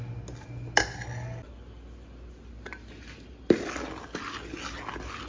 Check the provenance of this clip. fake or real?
real